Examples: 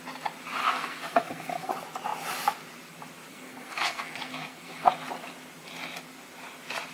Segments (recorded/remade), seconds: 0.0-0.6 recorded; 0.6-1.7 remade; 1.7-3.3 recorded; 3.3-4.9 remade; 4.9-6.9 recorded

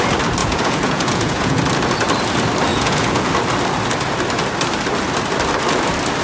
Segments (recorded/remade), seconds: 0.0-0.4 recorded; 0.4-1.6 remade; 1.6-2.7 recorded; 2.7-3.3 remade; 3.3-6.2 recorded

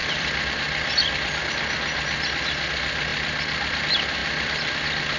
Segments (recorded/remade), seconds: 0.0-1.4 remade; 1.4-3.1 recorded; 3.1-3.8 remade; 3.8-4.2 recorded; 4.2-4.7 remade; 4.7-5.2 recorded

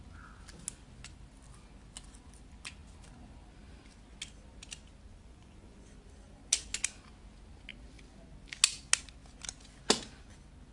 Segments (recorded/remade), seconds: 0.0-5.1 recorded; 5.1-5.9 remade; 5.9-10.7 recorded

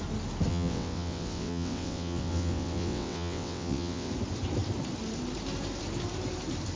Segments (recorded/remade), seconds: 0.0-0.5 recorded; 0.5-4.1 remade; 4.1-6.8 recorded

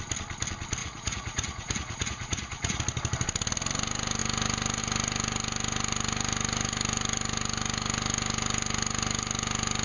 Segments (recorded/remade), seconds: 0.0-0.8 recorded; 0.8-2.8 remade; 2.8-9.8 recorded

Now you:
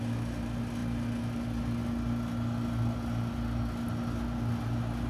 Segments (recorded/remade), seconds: 0.0-5.1 recorded